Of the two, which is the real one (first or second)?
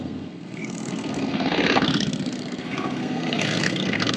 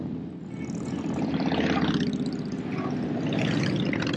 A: second